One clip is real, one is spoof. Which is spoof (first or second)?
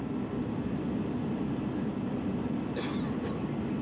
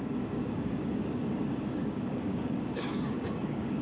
second